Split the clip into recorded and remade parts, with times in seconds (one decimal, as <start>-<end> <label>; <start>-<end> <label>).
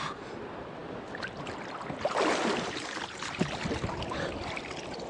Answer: 0.0-5.1 recorded